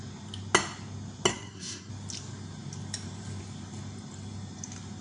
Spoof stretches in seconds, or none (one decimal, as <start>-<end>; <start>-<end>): 1.3-1.9